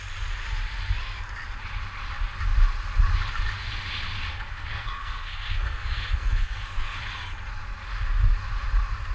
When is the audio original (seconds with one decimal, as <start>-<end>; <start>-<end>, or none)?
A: 0.0-4.3; 7.0-9.1